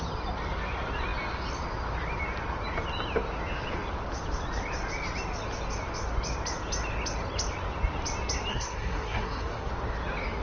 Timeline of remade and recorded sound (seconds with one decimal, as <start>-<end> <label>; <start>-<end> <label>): 0.0-8.5 recorded; 8.5-9.7 remade; 9.7-10.4 recorded